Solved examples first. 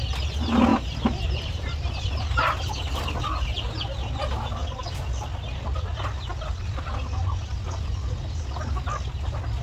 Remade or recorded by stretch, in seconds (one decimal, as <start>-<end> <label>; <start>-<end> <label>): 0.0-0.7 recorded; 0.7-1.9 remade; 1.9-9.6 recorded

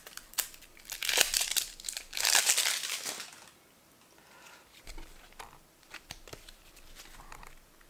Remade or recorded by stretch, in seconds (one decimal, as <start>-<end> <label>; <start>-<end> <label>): 0.0-7.9 remade

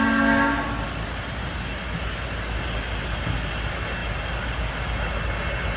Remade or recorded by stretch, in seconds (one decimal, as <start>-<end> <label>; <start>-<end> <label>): 0.0-5.8 recorded